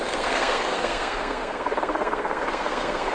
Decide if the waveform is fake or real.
fake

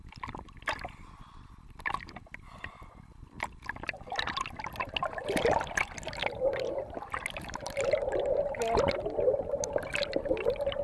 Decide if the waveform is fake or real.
real